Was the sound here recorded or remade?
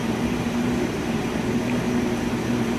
recorded